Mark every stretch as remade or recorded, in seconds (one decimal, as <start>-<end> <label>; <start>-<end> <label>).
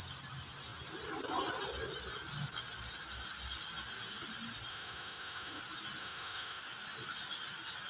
0.0-4.7 recorded; 4.7-5.6 remade; 5.6-6.0 recorded; 6.0-6.6 remade; 6.6-7.9 recorded